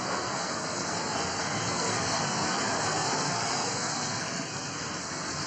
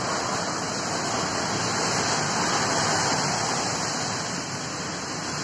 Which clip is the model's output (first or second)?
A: first